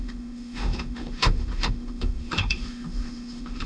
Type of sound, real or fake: fake